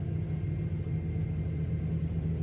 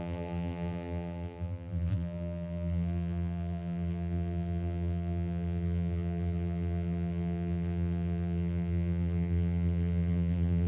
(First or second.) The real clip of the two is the first